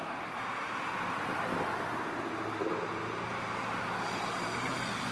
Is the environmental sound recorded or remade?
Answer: recorded